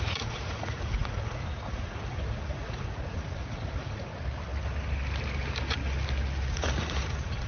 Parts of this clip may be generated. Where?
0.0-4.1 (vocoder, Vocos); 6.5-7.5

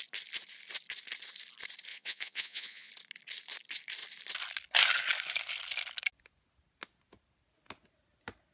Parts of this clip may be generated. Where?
1.9-2.9 (vocoder, Vocos)

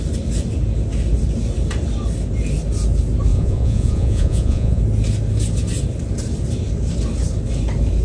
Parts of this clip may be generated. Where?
3.3-4.8 (vocoder, Vocos)

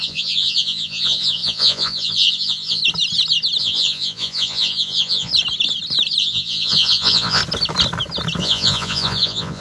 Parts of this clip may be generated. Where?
0.0-2.8 (vocoder, Vocos); 3.6-5.3; 6.2-7.4; 8.4-9.6

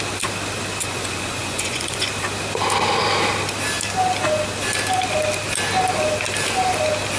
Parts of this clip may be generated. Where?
0.8-2.1 (vocoder, Vocos)